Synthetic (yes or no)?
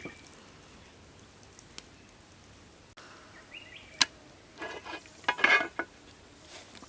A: no